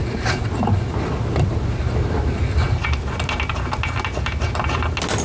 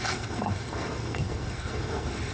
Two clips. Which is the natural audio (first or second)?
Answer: first